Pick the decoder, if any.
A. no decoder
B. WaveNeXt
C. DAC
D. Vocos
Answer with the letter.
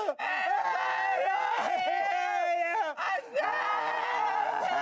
A